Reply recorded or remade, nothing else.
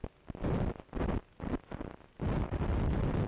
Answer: recorded